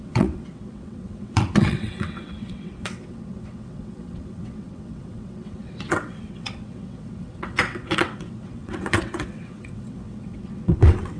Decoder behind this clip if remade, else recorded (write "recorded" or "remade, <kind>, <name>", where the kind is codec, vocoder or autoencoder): remade, vocoder, WaveNeXt